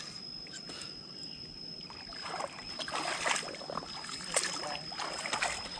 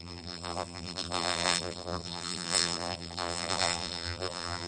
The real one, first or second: first